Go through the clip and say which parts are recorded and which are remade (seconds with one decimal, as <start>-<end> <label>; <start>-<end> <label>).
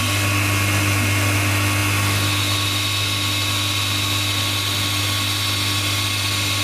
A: 0.0-6.6 recorded